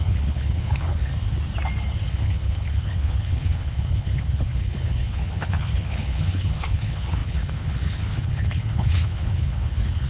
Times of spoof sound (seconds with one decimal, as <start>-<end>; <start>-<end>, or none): 0.0-1.1; 2.1-10.1